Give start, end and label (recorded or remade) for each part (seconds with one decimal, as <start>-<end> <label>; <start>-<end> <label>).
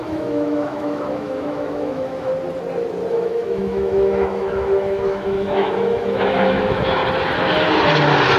0.0-2.3 remade; 2.3-3.1 recorded; 3.1-7.0 remade; 7.0-8.4 recorded